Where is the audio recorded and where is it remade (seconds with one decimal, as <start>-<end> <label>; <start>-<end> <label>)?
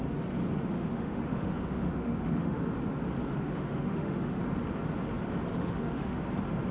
0.0-0.7 recorded; 0.7-2.7 remade; 2.7-3.2 recorded; 3.2-4.4 remade; 4.4-5.5 recorded; 5.5-6.2 remade; 6.2-6.7 recorded